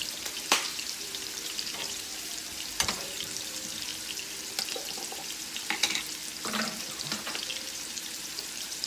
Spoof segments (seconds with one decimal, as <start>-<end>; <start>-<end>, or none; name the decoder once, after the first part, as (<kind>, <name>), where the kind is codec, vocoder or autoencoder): 0.0-2.1 (vocoder, BigVGAN v2); 2.9-3.9; 6.8-8.9